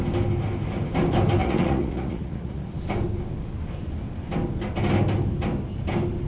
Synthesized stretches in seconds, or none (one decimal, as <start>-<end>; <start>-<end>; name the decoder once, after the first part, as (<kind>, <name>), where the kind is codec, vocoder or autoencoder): 1.4-2.7 (vocoder, Vocos)